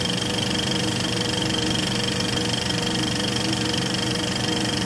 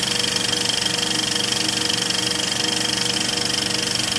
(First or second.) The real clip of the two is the second